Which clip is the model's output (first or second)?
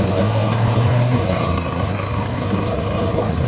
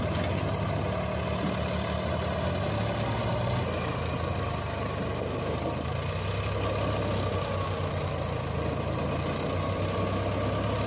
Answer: first